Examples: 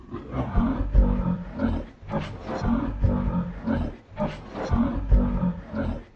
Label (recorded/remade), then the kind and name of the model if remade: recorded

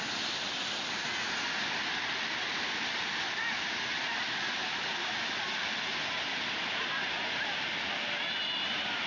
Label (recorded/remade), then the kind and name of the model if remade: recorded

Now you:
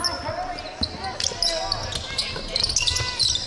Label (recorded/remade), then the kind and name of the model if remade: recorded